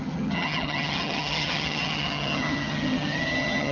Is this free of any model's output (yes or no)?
no